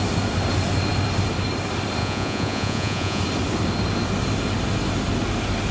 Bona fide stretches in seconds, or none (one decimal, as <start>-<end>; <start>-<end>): 0.0-2.0; 3.2-5.7